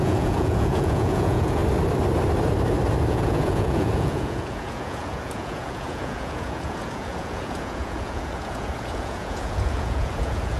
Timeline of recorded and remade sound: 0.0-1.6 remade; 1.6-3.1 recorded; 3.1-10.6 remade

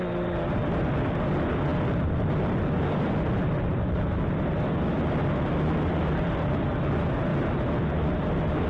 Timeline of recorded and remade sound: 0.0-8.7 recorded

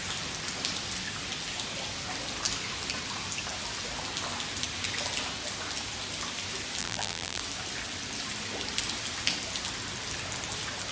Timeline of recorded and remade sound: 0.0-6.8 recorded; 6.8-7.4 remade; 7.4-10.9 recorded

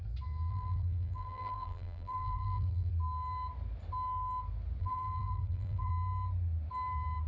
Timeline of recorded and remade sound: 0.0-0.5 recorded; 0.5-2.9 remade; 2.9-4.8 recorded; 4.8-5.9 remade; 5.9-7.3 recorded

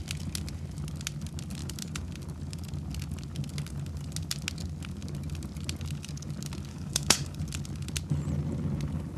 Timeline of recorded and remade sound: 0.0-6.7 recorded; 6.7-7.4 remade; 7.4-9.2 recorded

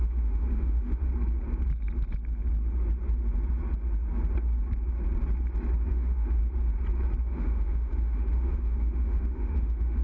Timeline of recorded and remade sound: 0.0-1.1 remade; 1.1-5.8 recorded; 5.8-6.4 remade; 6.4-7.2 recorded; 7.2-10.0 remade

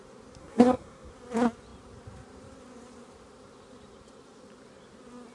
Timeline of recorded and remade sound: 0.0-0.4 recorded; 0.4-1.1 remade; 1.1-5.3 recorded

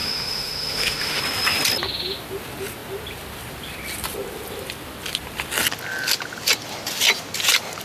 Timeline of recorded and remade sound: 0.0-1.2 remade; 1.2-7.8 recorded